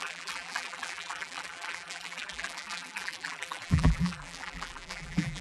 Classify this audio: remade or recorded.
remade